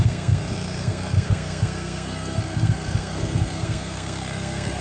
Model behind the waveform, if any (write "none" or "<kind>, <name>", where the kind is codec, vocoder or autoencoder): codec, SNAC